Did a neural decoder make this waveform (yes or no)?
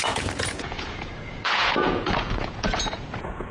yes